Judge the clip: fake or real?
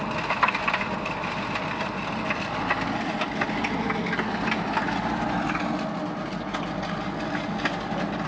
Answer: real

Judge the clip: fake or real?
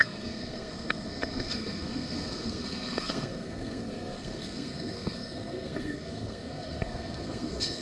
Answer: fake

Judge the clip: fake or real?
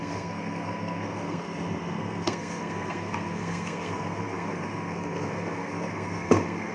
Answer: fake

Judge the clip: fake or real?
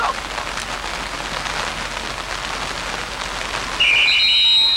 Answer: real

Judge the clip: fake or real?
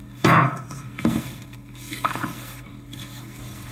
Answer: fake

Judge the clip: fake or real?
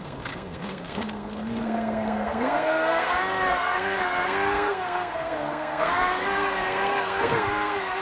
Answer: fake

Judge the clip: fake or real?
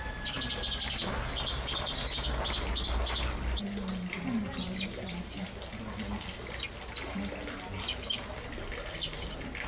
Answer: real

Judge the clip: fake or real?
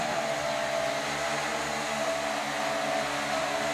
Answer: real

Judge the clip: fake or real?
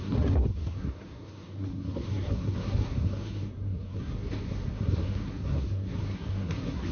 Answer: fake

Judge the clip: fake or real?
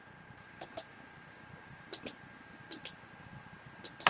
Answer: real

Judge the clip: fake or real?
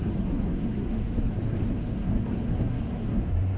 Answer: fake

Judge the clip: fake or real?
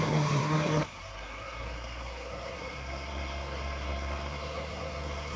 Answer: fake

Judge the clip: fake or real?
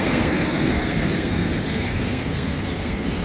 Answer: fake